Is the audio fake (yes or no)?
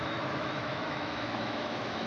yes